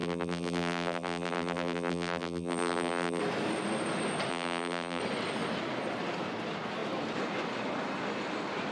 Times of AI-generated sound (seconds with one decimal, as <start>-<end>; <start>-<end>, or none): 0.0-3.2; 4.3-5.0